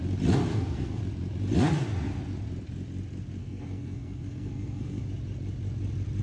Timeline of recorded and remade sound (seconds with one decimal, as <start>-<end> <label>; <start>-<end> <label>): 0.0-0.5 recorded; 0.5-1.0 remade; 1.0-3.4 recorded; 3.4-5.0 remade; 5.0-6.2 recorded